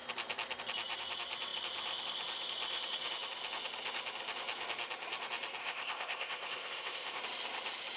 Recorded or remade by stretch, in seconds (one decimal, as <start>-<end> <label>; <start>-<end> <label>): 0.0-5.6 recorded; 5.6-7.2 remade; 7.2-8.0 recorded